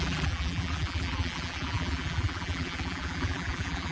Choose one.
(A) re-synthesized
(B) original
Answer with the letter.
A